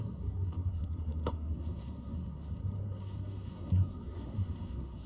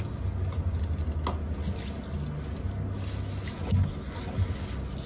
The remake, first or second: first